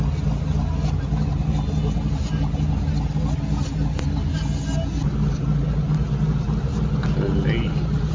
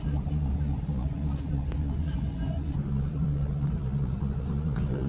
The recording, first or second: first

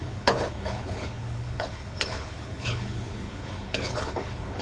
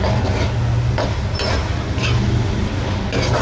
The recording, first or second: second